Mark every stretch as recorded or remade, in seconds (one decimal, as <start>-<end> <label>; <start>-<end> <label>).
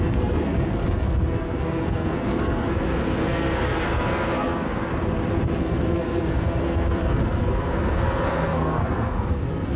0.0-4.9 remade; 4.9-5.6 recorded; 5.6-9.8 remade